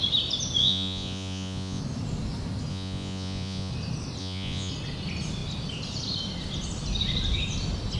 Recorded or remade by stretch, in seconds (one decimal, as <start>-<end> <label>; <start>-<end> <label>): 0.0-0.6 recorded; 0.6-1.8 remade; 1.8-2.7 recorded; 2.7-3.7 remade; 3.7-4.2 recorded; 4.2-4.7 remade; 4.7-8.0 recorded

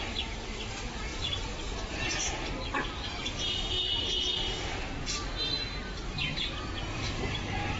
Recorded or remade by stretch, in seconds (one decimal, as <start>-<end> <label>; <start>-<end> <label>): 0.0-7.8 recorded

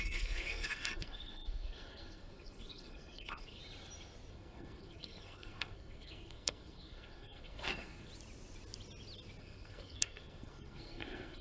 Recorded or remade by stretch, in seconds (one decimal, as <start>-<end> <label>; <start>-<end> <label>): 0.0-3.6 remade; 3.6-4.3 recorded; 4.3-8.1 remade; 8.1-9.4 recorded; 9.4-11.4 remade

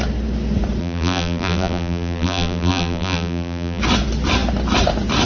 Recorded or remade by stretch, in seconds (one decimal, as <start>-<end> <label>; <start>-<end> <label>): 0.0-0.8 recorded; 0.8-3.8 remade; 3.8-5.3 recorded

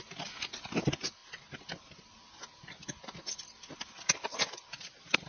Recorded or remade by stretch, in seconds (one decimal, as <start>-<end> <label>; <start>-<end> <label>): 0.0-5.3 recorded

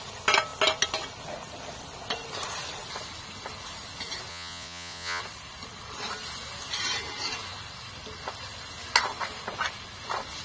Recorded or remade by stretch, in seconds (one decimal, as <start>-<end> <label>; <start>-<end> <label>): 0.0-4.3 recorded; 4.3-5.2 remade; 5.2-10.4 recorded